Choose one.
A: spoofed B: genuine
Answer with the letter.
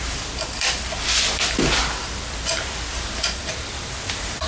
B